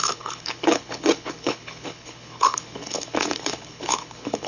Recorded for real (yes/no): no